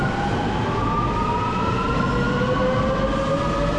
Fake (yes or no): no